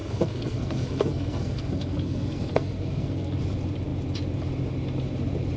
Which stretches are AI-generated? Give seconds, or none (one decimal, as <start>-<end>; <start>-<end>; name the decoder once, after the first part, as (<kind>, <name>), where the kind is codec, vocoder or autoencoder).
0.0-3.4 (codec, SNAC)